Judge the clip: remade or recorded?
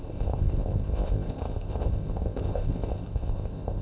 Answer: remade